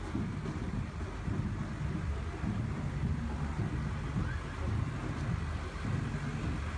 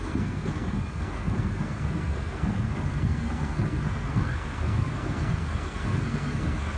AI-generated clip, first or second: second